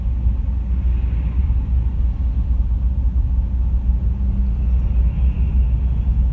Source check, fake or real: real